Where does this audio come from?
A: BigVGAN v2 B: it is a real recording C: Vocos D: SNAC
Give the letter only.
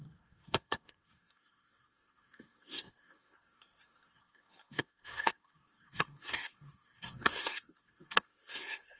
D